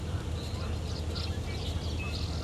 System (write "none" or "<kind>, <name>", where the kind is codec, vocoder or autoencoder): none